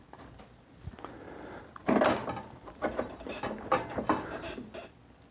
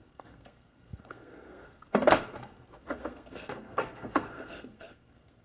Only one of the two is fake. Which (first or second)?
second